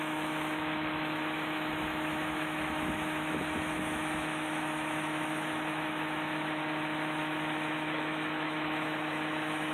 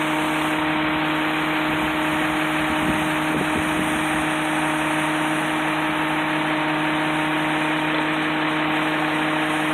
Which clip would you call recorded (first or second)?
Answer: second